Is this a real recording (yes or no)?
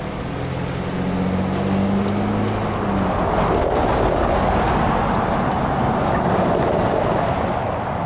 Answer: yes